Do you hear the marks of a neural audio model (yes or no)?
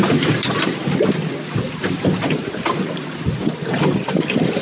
no